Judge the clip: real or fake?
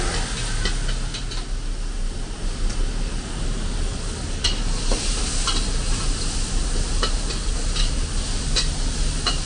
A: real